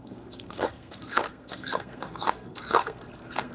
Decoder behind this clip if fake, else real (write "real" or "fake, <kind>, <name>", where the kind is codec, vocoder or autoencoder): fake, codec, SNAC